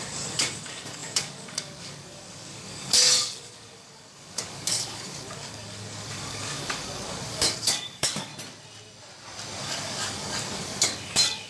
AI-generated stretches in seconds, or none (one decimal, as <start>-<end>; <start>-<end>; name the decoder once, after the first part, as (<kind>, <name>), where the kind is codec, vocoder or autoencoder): 0.0-8.3 (codec, DAC); 9.6-11.5